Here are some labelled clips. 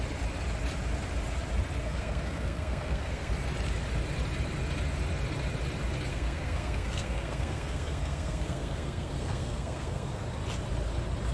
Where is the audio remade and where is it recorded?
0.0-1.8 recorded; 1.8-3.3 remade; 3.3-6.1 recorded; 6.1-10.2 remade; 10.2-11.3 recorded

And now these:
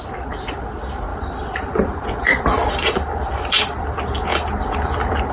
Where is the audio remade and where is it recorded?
0.0-1.1 recorded; 1.1-3.8 remade; 3.8-4.3 recorded; 4.3-5.3 remade

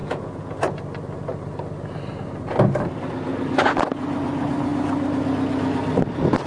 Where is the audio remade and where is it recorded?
0.0-0.6 remade; 0.6-6.5 recorded

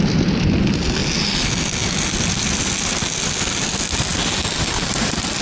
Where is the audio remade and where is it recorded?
0.0-5.4 recorded

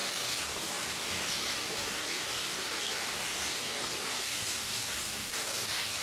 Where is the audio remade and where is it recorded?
0.0-6.0 remade

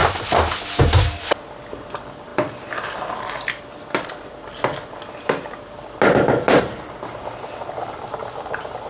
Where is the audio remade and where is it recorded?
0.0-8.9 recorded

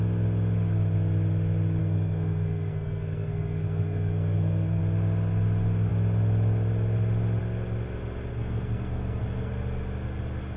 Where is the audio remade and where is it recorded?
0.0-1.8 recorded; 1.8-4.8 remade; 4.8-8.3 recorded; 8.3-9.5 remade; 9.5-10.6 recorded